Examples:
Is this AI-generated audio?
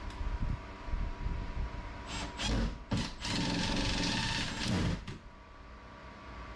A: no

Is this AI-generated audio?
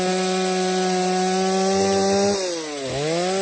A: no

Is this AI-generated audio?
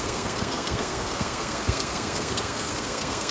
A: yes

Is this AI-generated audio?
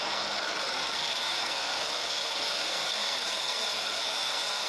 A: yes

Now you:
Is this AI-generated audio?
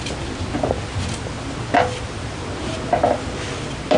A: no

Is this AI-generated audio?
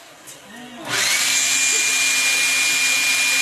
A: no